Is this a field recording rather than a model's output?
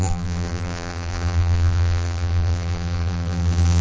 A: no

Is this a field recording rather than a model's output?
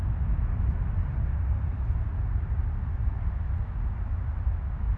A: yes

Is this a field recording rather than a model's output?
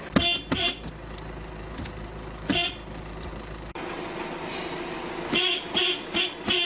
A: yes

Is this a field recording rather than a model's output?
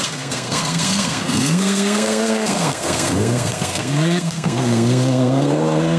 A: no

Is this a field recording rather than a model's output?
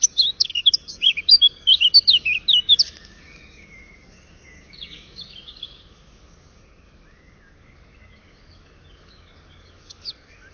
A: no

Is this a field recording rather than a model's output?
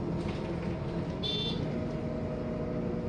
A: yes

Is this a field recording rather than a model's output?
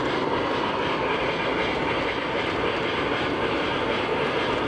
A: no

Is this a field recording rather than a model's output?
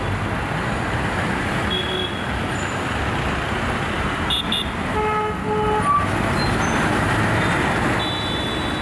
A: yes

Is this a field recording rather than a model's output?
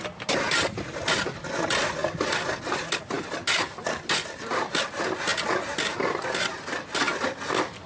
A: yes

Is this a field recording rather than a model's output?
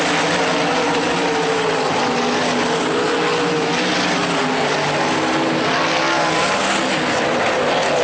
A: yes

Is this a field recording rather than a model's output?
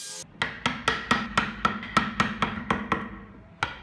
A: yes